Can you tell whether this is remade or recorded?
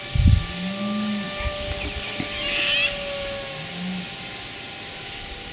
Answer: recorded